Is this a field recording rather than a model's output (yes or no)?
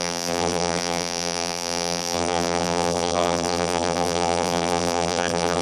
no